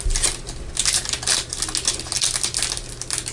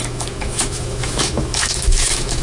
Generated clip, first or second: second